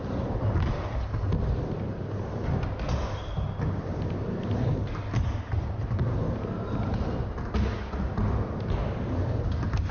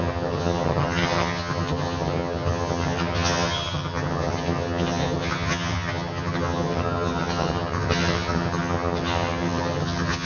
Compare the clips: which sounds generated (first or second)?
second